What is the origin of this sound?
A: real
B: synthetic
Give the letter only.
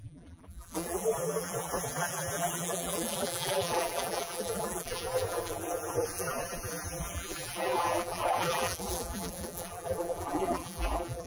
B